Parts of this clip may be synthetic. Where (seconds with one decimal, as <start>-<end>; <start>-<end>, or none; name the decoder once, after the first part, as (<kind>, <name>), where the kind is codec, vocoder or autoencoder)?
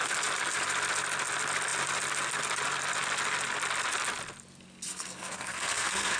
4.9-6.2 (codec, SNAC)